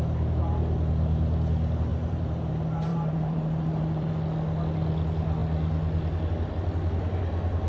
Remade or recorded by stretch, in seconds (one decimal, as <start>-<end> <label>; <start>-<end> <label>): 0.0-1.9 recorded; 1.9-2.5 remade; 2.5-2.9 recorded; 2.9-4.1 remade; 4.1-7.7 recorded